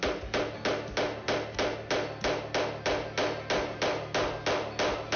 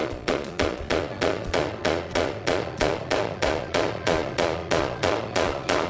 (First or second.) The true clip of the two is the first